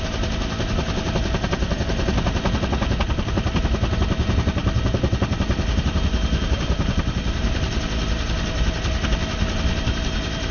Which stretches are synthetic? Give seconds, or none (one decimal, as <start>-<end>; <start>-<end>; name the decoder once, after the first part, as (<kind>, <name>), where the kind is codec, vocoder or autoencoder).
none